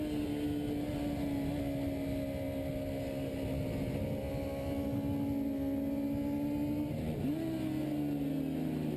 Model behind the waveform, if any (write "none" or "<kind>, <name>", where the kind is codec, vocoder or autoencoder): none